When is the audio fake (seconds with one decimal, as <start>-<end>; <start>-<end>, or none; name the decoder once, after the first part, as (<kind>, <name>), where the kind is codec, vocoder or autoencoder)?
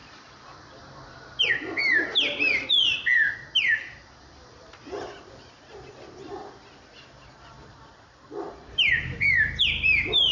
0.0-10.3 (vocoder, BigVGAN v2)